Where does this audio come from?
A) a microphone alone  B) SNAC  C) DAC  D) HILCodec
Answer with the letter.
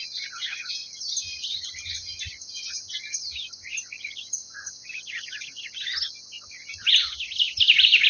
A